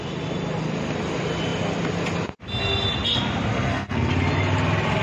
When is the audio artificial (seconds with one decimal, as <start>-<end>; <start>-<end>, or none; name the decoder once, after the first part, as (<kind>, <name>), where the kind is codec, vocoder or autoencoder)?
3.5-4.1 (codec, SNAC)